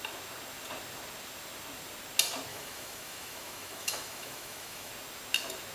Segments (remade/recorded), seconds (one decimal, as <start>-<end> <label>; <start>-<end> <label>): 0.0-2.5 recorded; 2.5-4.9 remade; 4.9-5.7 recorded